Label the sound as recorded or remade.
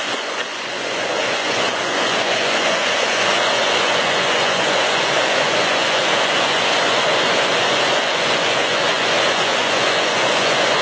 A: remade